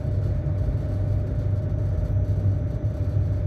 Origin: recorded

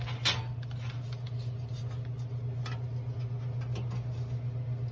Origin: recorded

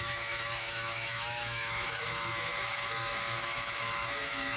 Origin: remade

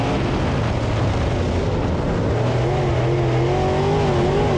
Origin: recorded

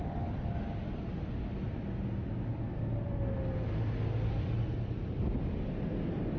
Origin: recorded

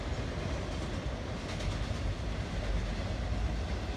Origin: recorded